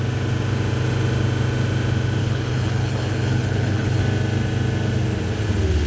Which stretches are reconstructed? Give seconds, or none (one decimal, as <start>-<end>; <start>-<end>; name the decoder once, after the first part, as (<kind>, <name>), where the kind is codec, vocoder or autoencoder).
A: 2.2-4.0 (codec, HILCodec)